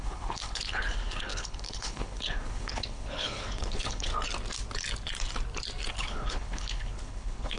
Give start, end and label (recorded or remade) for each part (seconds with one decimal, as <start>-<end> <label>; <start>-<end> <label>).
0.0-4.1 remade; 4.1-5.9 recorded; 5.9-7.6 remade

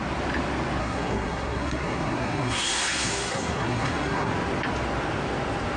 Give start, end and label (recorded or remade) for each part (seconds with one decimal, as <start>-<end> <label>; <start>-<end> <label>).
0.0-0.8 recorded; 0.8-4.3 remade; 4.3-5.8 recorded

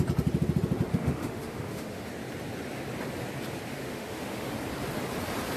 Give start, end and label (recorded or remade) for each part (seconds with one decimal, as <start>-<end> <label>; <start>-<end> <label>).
0.0-0.9 recorded; 0.9-2.1 remade; 2.1-3.7 recorded; 3.7-4.5 remade; 4.5-5.6 recorded

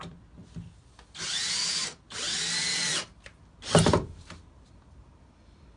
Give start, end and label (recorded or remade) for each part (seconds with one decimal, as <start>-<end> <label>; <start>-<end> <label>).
0.0-5.8 recorded

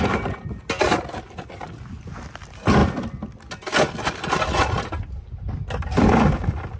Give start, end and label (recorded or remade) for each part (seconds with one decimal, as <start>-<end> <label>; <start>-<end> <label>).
0.0-6.8 recorded

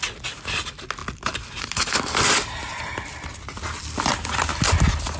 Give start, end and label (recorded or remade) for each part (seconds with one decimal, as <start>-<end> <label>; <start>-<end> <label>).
0.0-5.2 recorded

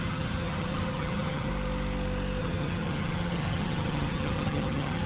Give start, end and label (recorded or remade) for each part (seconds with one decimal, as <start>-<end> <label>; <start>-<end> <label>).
0.0-1.5 remade; 1.5-2.4 recorded; 2.4-5.1 remade

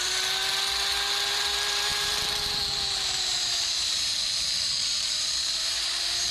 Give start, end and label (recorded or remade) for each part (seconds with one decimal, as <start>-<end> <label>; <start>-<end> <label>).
0.0-0.4 remade; 0.4-1.3 recorded; 1.3-6.3 remade